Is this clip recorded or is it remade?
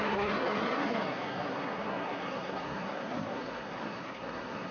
remade